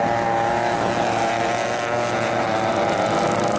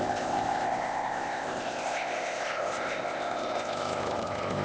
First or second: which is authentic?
first